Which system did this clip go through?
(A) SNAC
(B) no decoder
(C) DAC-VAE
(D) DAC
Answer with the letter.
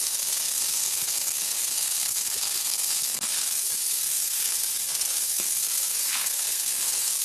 A